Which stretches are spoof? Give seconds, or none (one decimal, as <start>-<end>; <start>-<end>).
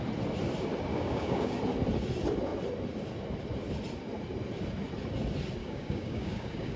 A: 0.9-1.6; 5.6-6.8